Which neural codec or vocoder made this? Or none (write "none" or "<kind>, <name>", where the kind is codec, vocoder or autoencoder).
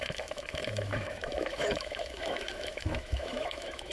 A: autoencoder, DAC-VAE